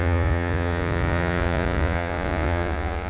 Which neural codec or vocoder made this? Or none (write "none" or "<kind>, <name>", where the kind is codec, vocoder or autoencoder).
vocoder, Vocos